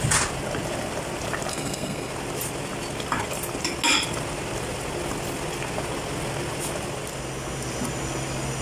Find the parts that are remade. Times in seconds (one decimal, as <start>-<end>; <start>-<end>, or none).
1.5-2.1